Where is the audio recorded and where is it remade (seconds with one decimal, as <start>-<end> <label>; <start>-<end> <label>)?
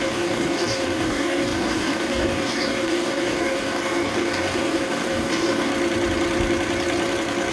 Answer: 0.0-5.7 remade; 5.7-7.5 recorded